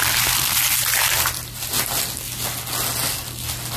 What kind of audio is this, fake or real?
real